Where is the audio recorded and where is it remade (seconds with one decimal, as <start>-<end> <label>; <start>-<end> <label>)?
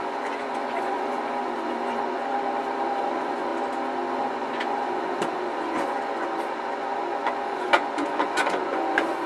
0.0-2.3 remade; 2.3-3.0 recorded; 3.0-3.5 remade; 3.5-4.2 recorded; 4.2-9.3 remade